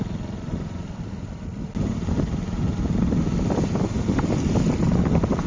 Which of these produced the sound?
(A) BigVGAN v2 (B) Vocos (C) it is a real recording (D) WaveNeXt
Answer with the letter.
C